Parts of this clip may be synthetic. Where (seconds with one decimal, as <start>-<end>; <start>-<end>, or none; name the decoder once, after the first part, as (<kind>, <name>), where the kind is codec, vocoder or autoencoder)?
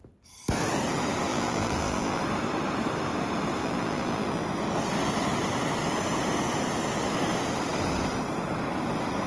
1.3-2.2 (vocoder, BigVGAN v2); 3.6-4.4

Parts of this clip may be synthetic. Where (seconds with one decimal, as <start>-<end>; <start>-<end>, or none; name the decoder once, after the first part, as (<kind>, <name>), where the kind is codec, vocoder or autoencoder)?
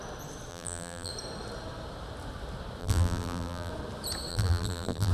0.5-1.1 (vocoder, BigVGAN v2); 2.8-3.7; 4.3-5.1